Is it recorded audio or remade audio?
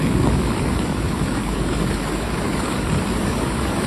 remade